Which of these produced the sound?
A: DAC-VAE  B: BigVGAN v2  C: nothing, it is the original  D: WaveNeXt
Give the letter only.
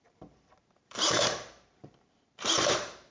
B